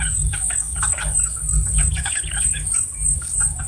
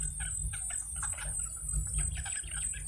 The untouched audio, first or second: second